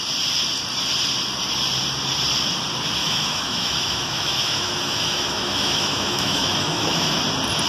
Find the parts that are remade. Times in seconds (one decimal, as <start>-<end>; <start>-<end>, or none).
3.0-7.1

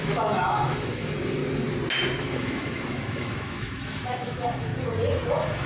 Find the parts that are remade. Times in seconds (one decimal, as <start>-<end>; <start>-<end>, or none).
0.0-1.4; 2.2-4.7; 5.3-5.7

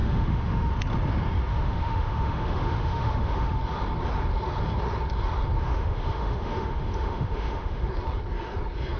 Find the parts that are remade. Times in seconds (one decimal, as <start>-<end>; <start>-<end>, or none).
0.0-0.7; 1.5-3.6; 5.6-7.9

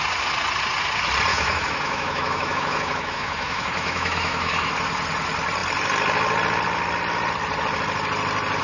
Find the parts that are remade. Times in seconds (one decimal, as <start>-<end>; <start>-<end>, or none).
1.3-4.7

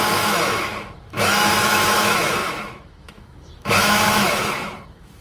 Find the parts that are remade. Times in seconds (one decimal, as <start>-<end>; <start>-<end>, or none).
0.0-5.2

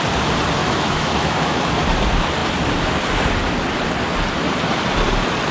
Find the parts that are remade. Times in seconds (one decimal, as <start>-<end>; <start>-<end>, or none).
0.6-1.7